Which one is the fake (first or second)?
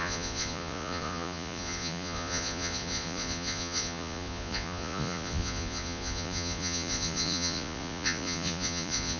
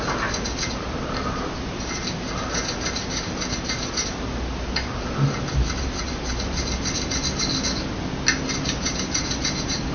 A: first